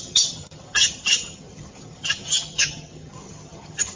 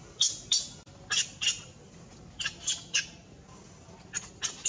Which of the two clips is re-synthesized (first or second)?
first